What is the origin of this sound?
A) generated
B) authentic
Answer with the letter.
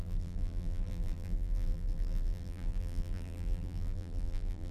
A